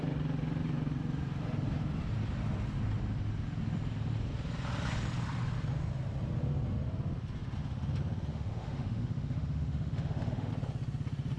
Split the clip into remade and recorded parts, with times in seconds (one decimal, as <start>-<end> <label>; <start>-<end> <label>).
0.0-8.3 recorded; 8.3-10.5 remade; 10.5-11.4 recorded